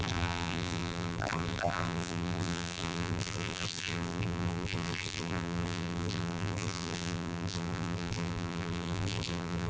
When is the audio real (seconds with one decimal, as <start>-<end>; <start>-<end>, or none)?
none